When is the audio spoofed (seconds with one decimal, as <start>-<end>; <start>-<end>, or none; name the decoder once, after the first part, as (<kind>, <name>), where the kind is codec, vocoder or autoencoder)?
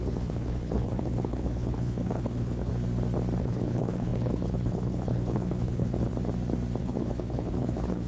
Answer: 0.0-2.7 (codec, HILCodec); 3.4-6.1; 6.8-8.1